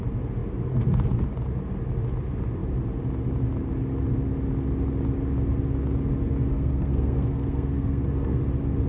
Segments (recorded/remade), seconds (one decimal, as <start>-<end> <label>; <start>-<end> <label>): 0.0-6.5 recorded; 6.5-8.4 remade; 8.4-8.9 recorded